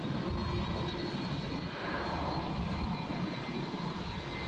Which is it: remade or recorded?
recorded